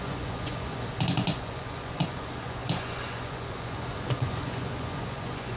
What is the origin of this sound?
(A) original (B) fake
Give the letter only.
B